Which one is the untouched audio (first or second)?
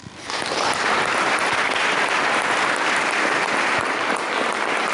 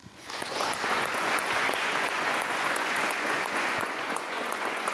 first